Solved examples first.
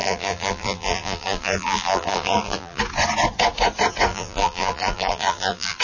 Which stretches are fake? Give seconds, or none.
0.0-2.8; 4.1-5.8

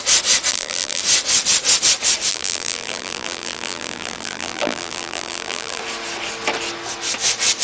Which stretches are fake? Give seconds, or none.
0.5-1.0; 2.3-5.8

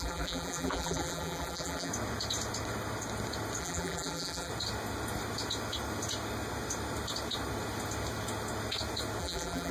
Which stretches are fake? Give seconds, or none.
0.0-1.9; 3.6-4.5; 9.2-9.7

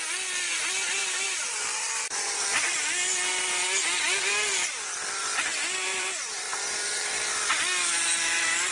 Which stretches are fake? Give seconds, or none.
1.0-2.9; 5.5-7.5

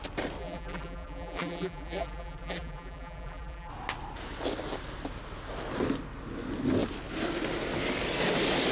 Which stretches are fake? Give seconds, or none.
0.4-3.7